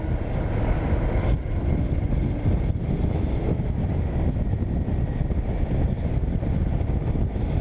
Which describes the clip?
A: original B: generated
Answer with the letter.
A